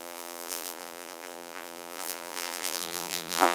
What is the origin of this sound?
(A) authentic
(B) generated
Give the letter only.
B